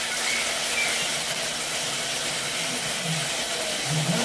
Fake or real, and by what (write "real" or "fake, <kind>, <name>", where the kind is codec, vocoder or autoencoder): real